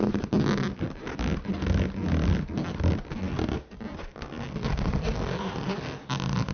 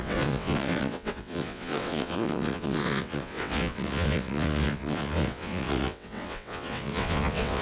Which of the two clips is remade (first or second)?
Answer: second